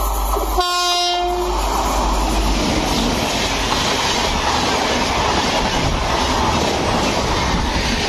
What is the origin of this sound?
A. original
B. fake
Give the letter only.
A